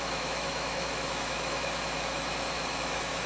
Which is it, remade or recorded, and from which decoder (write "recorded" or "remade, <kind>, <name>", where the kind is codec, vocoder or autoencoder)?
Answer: remade, autoencoder, DAC-VAE